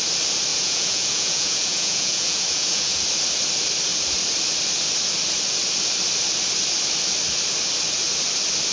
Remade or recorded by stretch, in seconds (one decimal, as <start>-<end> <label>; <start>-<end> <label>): 0.0-0.5 recorded; 0.5-3.0 remade; 3.0-8.7 recorded